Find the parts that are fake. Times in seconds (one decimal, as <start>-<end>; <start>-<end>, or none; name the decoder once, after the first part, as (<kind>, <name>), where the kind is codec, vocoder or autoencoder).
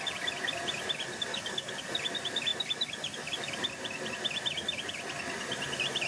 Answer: 1.3-1.8 (codec, DAC)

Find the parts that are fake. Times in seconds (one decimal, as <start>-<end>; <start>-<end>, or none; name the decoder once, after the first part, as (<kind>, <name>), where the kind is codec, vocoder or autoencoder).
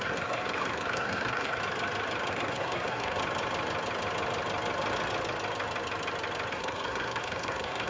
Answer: 0.0-1.6 (codec, SNAC); 2.3-3.2; 6.5-7.9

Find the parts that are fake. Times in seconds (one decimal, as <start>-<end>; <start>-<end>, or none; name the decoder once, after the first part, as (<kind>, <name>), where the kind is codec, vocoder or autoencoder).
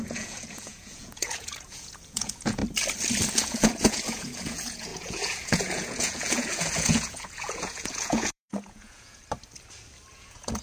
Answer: 0.0-2.6 (vocoder, Vocos); 3.3-9.2; 10.1-10.6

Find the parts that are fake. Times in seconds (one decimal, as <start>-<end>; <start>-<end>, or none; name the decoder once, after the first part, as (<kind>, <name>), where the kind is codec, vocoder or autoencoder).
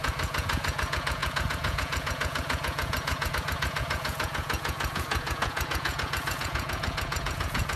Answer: 0.0-7.8 (vocoder, Vocos)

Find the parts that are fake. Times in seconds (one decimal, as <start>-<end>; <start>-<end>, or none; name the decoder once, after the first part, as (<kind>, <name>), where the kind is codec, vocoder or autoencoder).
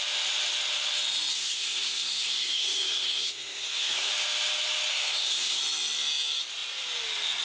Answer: 1.3-4.1 (codec, SNAC); 4.9-5.6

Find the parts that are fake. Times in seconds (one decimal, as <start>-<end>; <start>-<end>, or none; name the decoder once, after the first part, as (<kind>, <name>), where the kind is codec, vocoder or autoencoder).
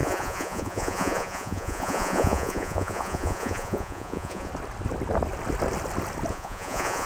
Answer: 0.0-4.5 (vocoder, Vocos); 6.3-7.1